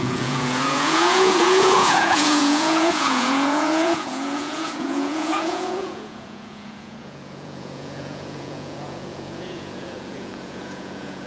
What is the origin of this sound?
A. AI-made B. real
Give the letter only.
A